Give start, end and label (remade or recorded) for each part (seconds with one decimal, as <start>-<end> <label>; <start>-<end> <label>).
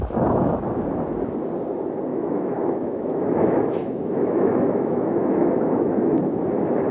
0.0-2.1 recorded; 2.1-6.2 remade; 6.2-6.9 recorded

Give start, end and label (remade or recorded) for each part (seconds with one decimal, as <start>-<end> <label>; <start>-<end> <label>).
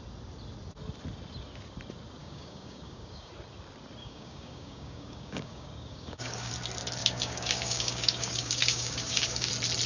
0.0-2.2 recorded; 2.2-3.3 remade; 3.3-4.0 recorded; 4.0-6.5 remade; 6.5-7.0 recorded; 7.0-9.5 remade; 9.5-9.9 recorded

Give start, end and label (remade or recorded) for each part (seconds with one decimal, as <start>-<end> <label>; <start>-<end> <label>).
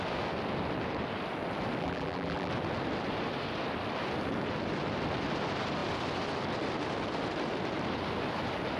0.0-1.8 recorded; 1.8-2.5 remade; 2.5-8.8 recorded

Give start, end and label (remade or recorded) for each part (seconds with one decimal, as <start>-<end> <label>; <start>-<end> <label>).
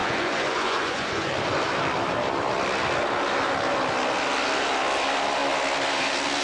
0.0-1.3 remade; 1.3-6.4 recorded